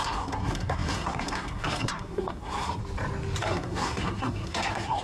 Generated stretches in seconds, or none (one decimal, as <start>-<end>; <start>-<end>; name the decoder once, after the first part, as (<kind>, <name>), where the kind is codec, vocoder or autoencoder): 0.0-2.8 (codec, SNAC); 3.4-5.0